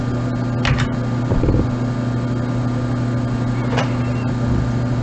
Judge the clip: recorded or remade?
recorded